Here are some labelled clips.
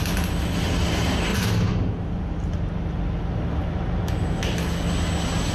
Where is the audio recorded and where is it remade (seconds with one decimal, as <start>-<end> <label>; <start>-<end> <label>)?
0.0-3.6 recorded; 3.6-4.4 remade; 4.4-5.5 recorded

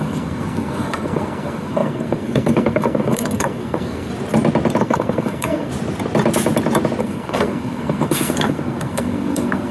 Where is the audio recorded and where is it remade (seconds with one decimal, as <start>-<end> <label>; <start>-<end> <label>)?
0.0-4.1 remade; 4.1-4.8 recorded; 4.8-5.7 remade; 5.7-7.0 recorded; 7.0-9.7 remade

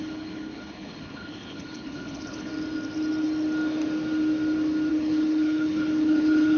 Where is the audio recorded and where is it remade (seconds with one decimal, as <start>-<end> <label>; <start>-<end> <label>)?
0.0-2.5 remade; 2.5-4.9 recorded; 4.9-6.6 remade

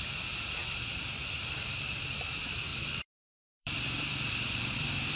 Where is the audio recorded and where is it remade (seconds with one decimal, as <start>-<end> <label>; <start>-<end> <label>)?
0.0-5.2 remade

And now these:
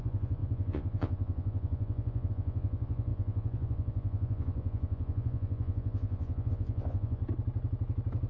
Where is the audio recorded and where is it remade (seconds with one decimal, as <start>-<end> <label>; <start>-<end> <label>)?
0.0-7.2 remade; 7.2-8.3 recorded

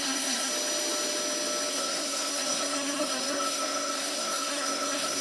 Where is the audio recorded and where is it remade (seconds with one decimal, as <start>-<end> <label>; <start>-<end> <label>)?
0.0-0.5 remade; 0.5-1.7 recorded; 1.7-5.2 remade